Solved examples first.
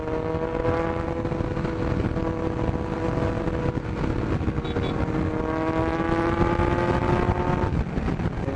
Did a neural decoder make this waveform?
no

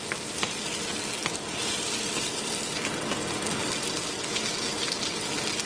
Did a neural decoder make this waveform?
no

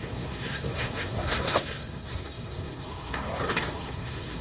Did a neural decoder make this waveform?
yes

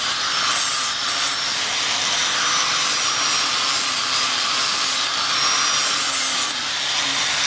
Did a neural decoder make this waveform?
no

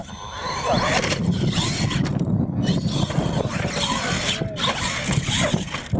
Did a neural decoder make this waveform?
no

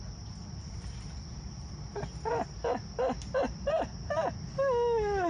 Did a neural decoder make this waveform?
no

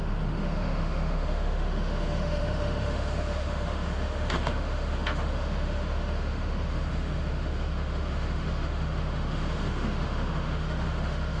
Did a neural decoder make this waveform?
yes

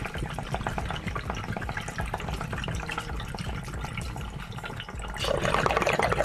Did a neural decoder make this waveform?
no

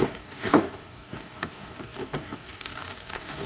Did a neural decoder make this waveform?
yes